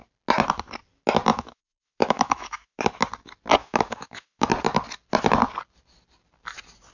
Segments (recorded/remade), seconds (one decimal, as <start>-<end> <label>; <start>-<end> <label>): 0.0-1.3 recorded; 1.3-2.9 remade; 2.9-3.6 recorded; 3.6-4.5 remade; 4.5-6.9 recorded